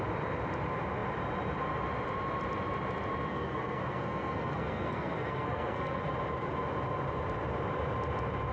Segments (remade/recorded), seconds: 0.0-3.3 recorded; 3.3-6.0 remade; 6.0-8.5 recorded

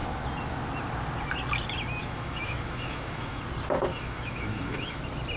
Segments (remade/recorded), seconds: 0.0-2.0 recorded; 2.0-3.4 remade; 3.4-3.9 recorded; 3.9-5.0 remade; 5.0-5.4 recorded

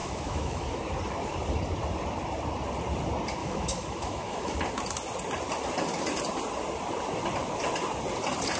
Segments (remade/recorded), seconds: 0.0-0.8 remade; 0.8-3.4 recorded; 3.4-4.5 remade; 4.5-8.6 recorded